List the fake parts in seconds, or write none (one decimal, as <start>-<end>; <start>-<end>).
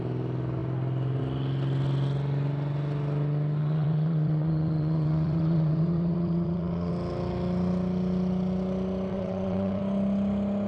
3.6-6.9; 9.1-9.8